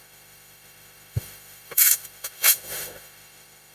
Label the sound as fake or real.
fake